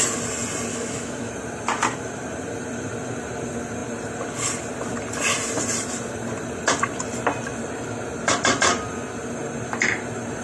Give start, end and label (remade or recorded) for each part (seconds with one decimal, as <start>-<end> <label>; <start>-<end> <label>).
0.0-0.7 recorded; 0.7-1.3 remade; 1.3-10.4 recorded